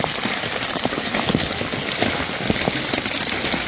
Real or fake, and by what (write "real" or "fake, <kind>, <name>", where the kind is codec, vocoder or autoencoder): real